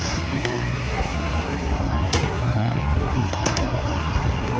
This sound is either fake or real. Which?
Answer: fake